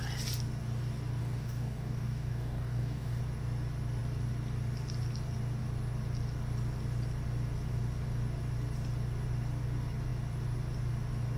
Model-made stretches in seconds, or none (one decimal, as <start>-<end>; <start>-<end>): 1.2-3.2